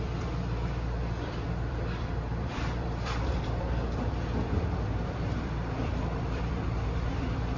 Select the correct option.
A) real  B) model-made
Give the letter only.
B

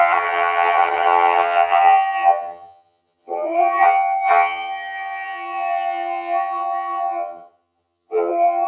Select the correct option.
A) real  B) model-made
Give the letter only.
B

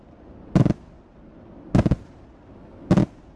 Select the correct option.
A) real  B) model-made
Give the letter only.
A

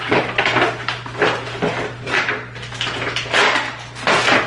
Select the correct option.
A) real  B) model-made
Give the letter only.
A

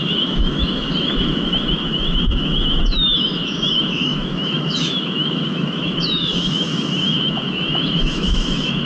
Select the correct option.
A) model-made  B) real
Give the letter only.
A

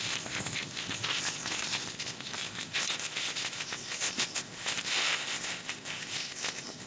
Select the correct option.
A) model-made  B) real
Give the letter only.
A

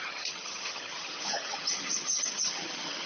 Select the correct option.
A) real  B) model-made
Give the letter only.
B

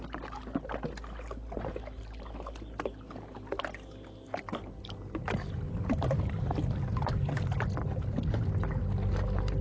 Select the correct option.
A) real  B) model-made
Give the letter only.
A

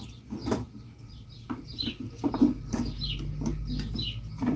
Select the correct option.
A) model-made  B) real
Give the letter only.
B